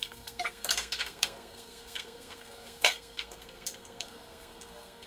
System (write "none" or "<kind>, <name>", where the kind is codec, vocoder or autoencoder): codec, SNAC